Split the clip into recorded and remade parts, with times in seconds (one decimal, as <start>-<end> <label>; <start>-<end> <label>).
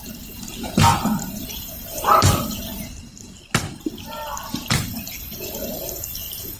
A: 0.0-0.9 recorded; 0.9-1.4 remade; 1.4-6.6 recorded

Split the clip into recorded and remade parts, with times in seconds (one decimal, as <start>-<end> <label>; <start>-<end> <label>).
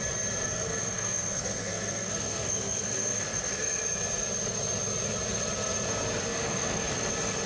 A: 0.0-0.4 recorded; 0.4-3.8 remade; 3.8-6.3 recorded; 6.3-6.9 remade; 6.9-7.5 recorded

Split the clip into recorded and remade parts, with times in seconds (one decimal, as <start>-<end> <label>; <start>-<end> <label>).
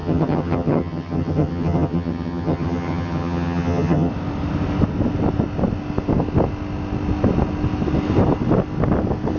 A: 0.0-4.1 remade; 4.1-9.4 recorded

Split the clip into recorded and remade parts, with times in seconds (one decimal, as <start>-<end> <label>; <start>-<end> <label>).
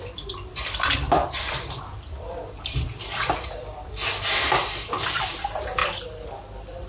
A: 0.0-6.9 remade